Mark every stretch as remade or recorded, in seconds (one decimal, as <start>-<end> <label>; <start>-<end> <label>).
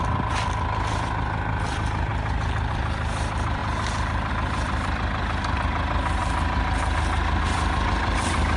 0.0-2.1 remade; 2.1-2.7 recorded; 2.7-3.6 remade; 3.6-4.3 recorded; 4.3-6.2 remade; 6.2-7.4 recorded; 7.4-8.6 remade